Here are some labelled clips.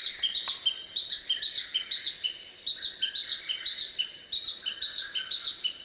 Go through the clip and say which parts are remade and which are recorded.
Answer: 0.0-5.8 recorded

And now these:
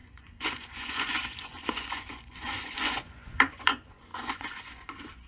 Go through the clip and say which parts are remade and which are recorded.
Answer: 0.0-5.3 remade

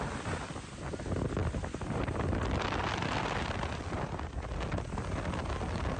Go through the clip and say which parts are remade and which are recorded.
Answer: 0.0-6.0 recorded

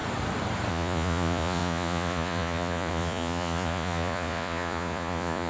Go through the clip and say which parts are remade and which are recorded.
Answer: 0.0-0.7 recorded; 0.7-5.5 remade

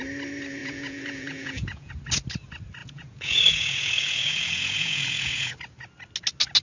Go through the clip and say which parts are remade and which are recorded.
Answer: 0.0-0.6 recorded; 0.6-1.9 remade; 1.9-2.8 recorded; 2.8-5.5 remade; 5.5-6.6 recorded